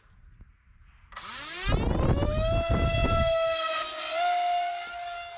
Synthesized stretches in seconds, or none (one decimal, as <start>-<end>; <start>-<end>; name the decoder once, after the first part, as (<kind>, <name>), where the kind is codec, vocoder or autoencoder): none